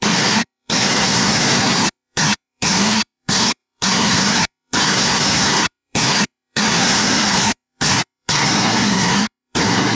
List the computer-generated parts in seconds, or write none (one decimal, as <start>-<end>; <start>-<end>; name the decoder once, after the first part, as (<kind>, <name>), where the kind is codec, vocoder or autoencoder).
0.0-9.9 (codec, SNAC)